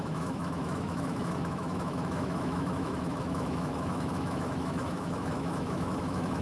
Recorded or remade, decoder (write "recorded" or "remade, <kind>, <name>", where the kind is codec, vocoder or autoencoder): remade, autoencoder, DAC-VAE